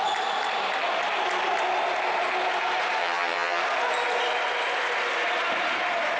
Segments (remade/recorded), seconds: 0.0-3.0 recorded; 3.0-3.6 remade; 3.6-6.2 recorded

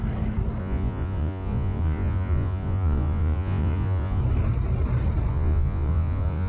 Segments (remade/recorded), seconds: 0.0-0.6 recorded; 0.6-4.2 remade; 4.2-5.3 recorded; 5.3-6.5 remade

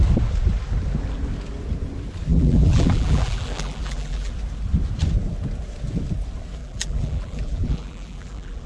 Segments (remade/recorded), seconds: 0.0-2.3 recorded; 2.3-4.3 remade; 4.3-6.6 recorded; 6.6-8.7 remade

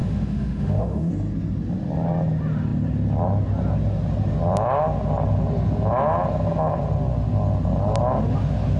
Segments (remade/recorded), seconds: 0.0-1.1 remade; 1.1-8.8 recorded

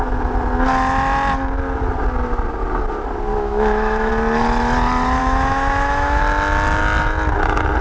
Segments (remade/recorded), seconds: 0.0-3.3 recorded; 3.3-4.1 remade; 4.1-5.2 recorded; 5.2-6.2 remade; 6.2-7.8 recorded

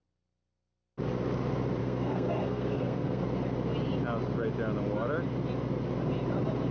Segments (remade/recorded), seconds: 0.0-1.8 recorded; 1.8-3.2 remade; 3.2-6.7 recorded

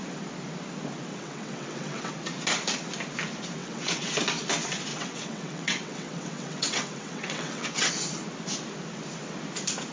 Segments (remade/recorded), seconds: 0.0-1.1 recorded; 1.1-2.1 remade; 2.1-3.6 recorded; 3.6-4.1 remade; 4.1-4.9 recorded; 4.9-7.9 remade; 7.9-9.9 recorded

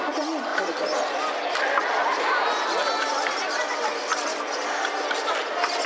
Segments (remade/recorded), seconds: 0.0-5.9 recorded